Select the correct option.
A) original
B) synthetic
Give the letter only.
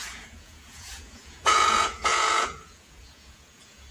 B